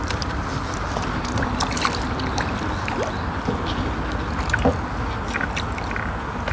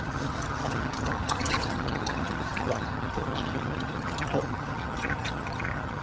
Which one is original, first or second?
first